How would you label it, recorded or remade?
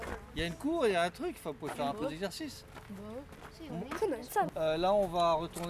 recorded